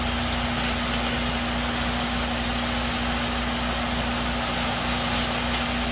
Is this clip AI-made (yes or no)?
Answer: no